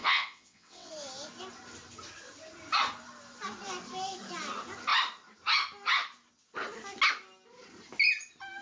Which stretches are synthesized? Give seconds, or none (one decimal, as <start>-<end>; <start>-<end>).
0.0-0.9